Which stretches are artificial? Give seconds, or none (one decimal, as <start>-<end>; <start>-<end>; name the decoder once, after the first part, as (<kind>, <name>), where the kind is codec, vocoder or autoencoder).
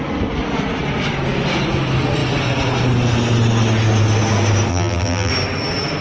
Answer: 4.7-5.3 (vocoder, BigVGAN v2)